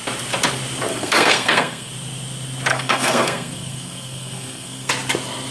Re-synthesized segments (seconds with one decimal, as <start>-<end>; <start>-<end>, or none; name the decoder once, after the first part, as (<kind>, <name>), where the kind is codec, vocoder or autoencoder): 0.9-1.9 (codec, SNAC); 2.7-4.9